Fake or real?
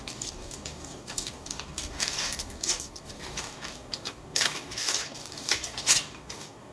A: fake